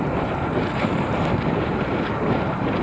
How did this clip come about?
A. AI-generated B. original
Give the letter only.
A